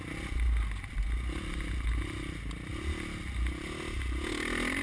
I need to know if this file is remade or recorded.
recorded